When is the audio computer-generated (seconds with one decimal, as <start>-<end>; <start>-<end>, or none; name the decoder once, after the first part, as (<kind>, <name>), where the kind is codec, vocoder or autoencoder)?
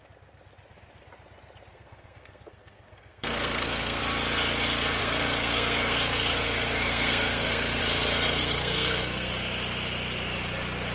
1.7-4.0 (codec, SNAC); 5.0-7.8; 8.4-9.3